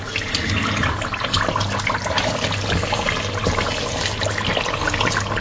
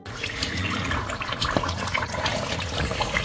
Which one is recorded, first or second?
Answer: first